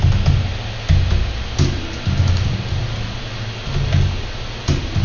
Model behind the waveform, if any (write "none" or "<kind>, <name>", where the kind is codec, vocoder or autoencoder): none